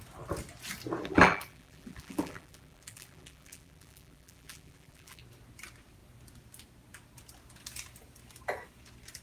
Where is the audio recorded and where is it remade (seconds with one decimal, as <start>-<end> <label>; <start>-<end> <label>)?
0.0-1.0 recorded; 1.0-5.2 remade; 5.2-9.2 recorded